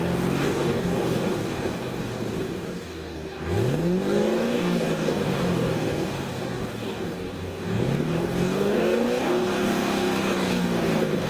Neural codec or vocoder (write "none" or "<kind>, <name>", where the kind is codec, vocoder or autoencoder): codec, DAC